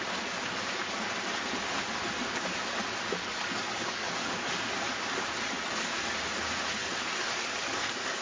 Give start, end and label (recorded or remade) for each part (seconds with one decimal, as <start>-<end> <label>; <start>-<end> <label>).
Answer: 0.0-3.3 recorded; 3.3-4.5 remade; 4.5-6.8 recorded; 6.8-8.2 remade